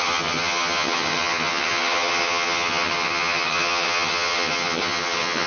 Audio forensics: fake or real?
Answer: fake